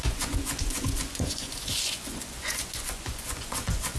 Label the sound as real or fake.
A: fake